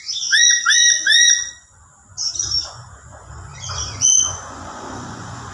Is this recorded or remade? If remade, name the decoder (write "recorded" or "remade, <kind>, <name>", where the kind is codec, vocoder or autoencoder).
remade, vocoder, Vocos